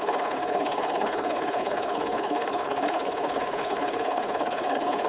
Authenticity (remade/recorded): remade